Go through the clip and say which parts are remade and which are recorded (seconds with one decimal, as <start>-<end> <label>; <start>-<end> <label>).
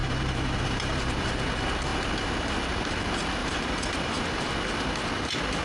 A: 0.0-1.3 remade; 1.3-3.4 recorded; 3.4-4.5 remade; 4.5-5.6 recorded